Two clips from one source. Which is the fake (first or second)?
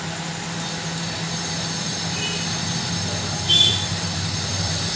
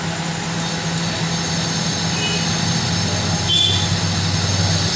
first